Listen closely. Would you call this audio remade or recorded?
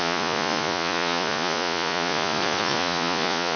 remade